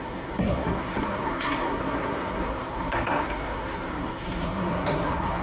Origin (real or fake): fake